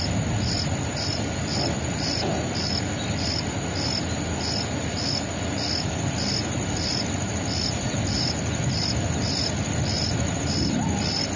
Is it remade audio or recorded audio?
recorded